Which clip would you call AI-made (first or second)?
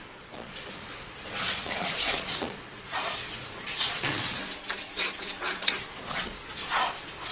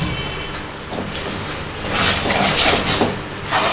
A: first